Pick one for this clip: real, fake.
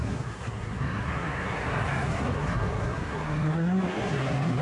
fake